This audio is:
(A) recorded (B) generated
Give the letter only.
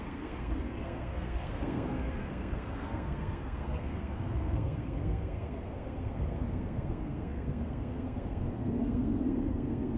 B